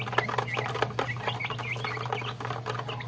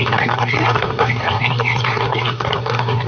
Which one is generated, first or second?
second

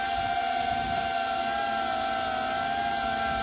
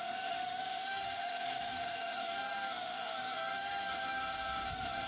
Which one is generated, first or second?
second